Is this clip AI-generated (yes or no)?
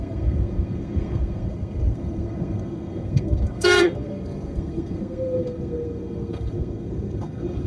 yes